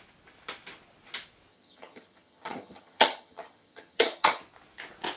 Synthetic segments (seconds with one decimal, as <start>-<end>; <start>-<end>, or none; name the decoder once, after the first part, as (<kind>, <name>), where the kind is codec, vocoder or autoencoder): 1.5-4.4 (vocoder, HiFi-GAN)